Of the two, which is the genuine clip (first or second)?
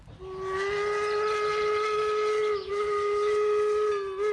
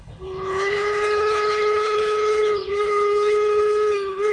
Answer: first